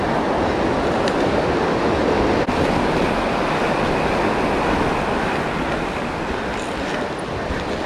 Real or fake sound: real